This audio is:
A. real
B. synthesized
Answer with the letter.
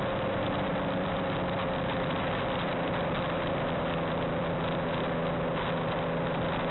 A